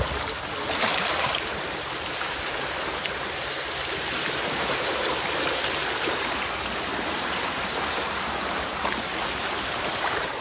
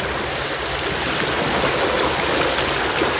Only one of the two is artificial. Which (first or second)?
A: first